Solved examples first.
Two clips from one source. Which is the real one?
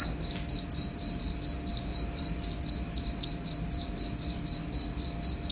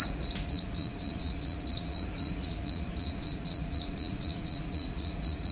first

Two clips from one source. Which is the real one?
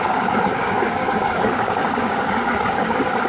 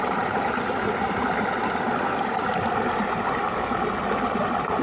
second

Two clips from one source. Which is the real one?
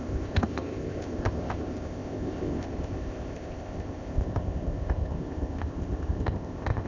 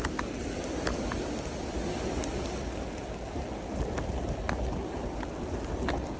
second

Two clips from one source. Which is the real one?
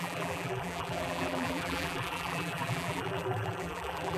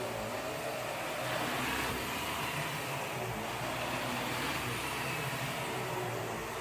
second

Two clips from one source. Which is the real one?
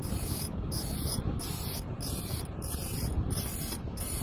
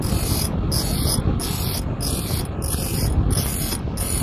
second